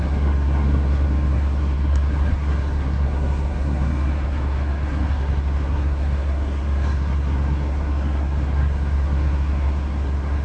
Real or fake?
fake